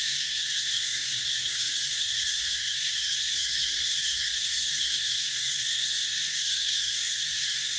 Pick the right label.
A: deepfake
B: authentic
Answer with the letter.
A